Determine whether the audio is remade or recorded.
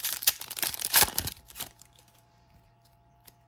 remade